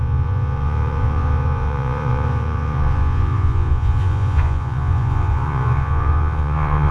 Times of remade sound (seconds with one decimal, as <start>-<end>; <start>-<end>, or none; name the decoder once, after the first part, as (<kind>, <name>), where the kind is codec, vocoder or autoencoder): 0.0-6.9 (vocoder, Vocos)